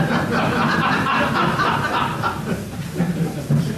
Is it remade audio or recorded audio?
recorded